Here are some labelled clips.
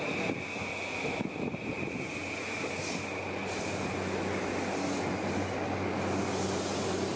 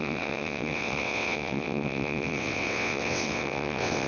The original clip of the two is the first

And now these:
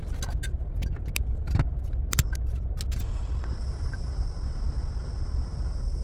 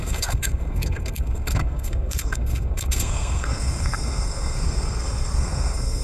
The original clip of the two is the first